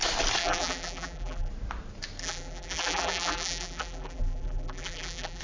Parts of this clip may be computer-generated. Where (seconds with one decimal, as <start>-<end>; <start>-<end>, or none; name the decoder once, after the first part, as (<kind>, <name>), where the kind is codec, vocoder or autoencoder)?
0.4-1.5 (vocoder, BigVGAN v2); 2.2-5.4